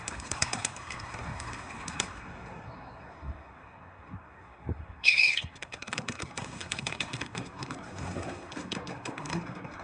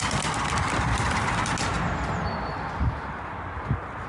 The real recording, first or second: second